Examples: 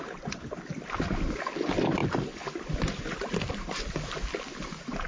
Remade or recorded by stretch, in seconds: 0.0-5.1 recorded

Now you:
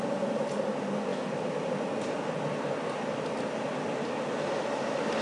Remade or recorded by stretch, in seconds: 0.0-5.2 recorded

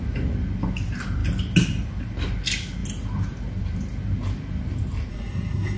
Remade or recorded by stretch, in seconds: 0.0-5.1 recorded; 5.1-5.8 remade

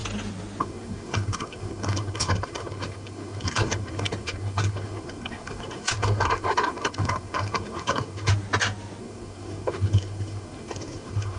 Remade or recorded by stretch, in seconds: 0.0-0.6 recorded; 0.6-8.3 remade; 8.3-9.0 recorded; 9.0-11.4 remade